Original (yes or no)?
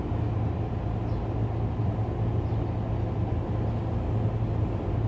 yes